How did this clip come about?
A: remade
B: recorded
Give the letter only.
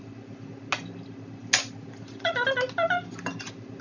B